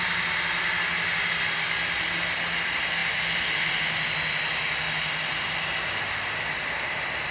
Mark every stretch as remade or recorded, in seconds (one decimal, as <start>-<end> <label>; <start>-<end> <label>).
0.0-7.3 recorded